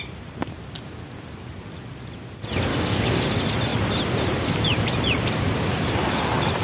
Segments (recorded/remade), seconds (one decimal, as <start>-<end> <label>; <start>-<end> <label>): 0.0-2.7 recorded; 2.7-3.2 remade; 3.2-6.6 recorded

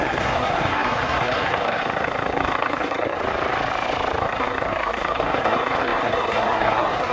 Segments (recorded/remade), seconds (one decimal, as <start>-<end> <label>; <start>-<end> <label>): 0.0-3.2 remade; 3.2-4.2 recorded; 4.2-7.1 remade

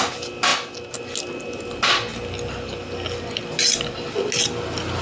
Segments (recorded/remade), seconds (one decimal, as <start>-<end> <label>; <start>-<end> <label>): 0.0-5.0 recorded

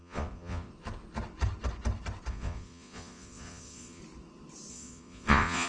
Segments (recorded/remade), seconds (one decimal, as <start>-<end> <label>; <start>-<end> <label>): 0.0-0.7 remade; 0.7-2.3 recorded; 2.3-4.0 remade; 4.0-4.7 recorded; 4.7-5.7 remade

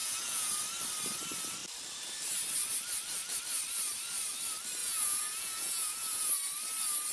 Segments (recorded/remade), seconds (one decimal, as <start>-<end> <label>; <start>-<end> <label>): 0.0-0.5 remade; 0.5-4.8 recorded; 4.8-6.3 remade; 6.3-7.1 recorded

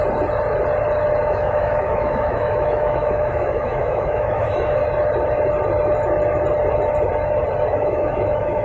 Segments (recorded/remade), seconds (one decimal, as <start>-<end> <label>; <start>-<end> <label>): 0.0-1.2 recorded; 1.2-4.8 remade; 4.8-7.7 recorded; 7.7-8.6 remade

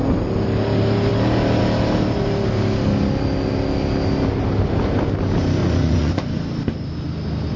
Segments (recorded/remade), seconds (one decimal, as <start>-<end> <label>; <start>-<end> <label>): 0.0-5.6 recorded; 5.6-6.4 remade; 6.4-7.6 recorded